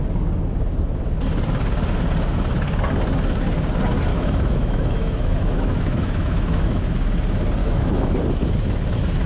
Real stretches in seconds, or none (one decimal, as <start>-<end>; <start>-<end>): 0.0-4.1; 6.8-7.6; 8.2-9.3

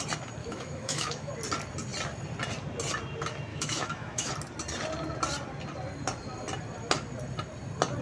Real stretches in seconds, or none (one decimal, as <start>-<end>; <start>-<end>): 0.0-0.4; 1.3-3.5; 4.3-8.0

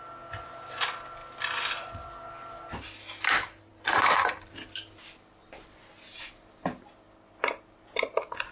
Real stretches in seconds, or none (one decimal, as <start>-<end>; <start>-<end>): 0.0-8.5

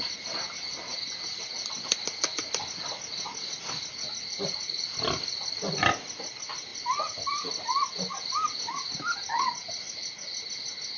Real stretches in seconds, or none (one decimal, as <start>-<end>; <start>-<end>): 0.0-11.0